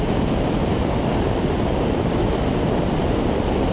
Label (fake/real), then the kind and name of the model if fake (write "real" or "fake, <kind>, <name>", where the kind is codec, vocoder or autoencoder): real